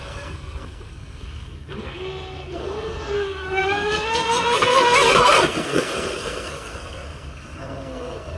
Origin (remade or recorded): remade